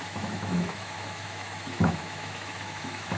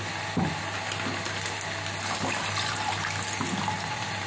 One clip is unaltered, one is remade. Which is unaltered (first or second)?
second